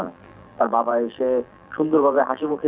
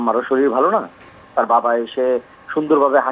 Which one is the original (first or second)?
second